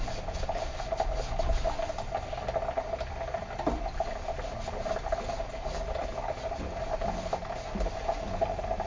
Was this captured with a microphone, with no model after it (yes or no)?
no